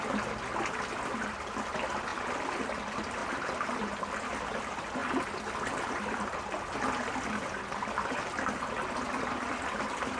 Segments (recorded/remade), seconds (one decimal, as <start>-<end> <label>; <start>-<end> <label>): 0.0-10.2 recorded